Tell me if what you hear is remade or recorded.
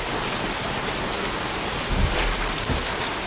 recorded